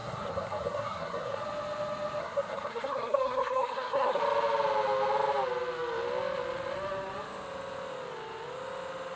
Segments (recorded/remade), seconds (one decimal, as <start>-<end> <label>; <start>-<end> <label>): 0.0-1.4 remade; 1.4-2.2 recorded; 2.2-4.2 remade; 4.2-9.2 recorded